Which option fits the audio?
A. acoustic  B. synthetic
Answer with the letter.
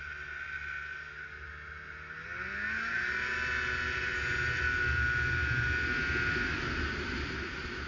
A